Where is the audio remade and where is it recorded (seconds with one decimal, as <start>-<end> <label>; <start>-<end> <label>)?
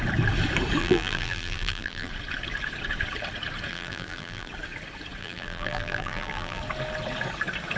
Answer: 0.0-0.8 recorded; 0.8-2.1 remade; 2.1-3.7 recorded; 3.7-4.5 remade; 4.5-5.2 recorded; 5.2-6.6 remade; 6.6-7.8 recorded